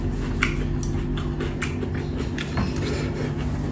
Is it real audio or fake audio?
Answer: real